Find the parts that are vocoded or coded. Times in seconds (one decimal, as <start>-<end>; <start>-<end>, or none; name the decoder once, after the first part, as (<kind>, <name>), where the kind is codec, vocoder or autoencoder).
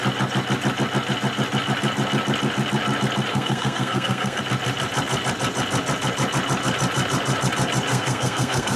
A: 3.3-4.4 (codec, SNAC); 7.9-8.8